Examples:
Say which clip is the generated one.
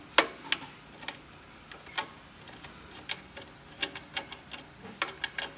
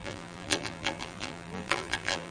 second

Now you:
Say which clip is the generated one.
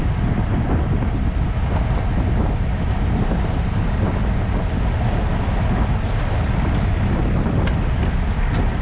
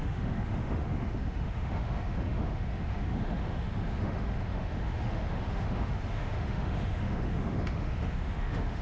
second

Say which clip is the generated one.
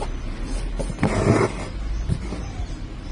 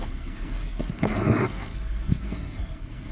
second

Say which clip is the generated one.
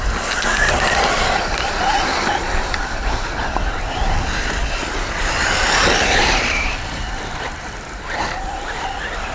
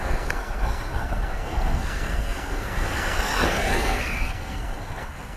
second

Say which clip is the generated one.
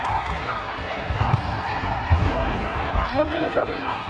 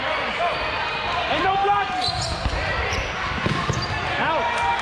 first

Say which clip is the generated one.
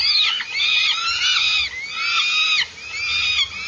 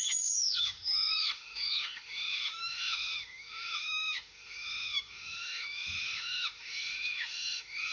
second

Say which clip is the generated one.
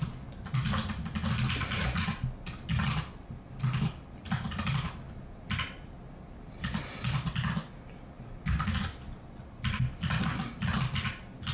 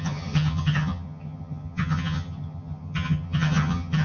second